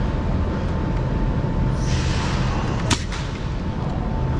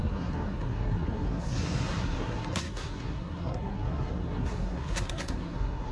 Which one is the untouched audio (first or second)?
first